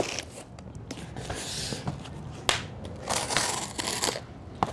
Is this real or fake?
real